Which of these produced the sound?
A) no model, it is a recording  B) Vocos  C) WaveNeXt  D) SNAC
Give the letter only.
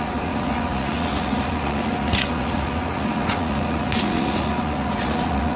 B